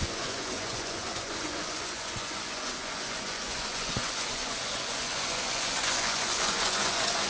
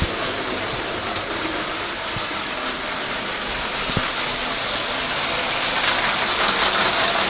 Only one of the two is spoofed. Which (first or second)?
first